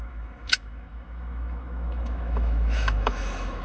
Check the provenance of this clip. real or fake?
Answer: fake